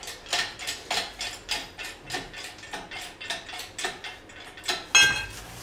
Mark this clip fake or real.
real